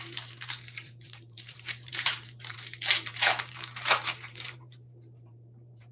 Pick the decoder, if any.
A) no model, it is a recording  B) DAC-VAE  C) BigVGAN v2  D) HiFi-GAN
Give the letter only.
C